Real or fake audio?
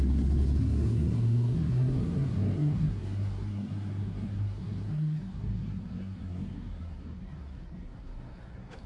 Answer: fake